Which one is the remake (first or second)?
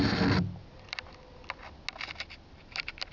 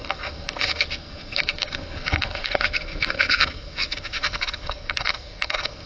second